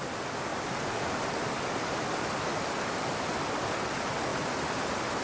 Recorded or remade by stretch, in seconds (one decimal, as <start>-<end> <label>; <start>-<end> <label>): 0.0-0.5 recorded; 0.5-3.6 remade; 3.6-5.2 recorded